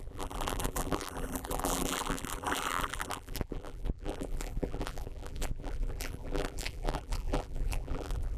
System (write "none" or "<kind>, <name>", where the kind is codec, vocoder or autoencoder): vocoder, BigVGAN v2